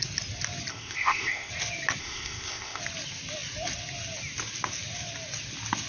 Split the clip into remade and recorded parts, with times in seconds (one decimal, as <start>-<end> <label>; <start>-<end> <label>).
0.0-0.7 recorded; 0.7-1.5 remade; 1.5-2.0 recorded; 2.0-2.8 remade; 2.8-5.9 recorded